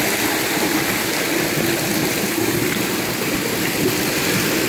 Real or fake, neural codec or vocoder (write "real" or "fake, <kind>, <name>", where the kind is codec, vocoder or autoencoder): real